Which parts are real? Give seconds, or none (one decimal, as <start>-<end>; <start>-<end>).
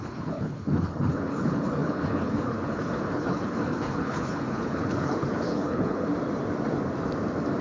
6.1-7.6